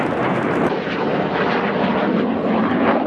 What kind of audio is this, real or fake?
real